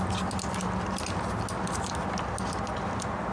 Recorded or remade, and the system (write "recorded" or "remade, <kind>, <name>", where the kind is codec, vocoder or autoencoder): recorded